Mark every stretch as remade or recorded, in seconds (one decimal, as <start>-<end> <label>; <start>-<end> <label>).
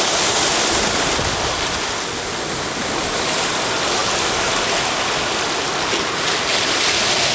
0.0-7.3 recorded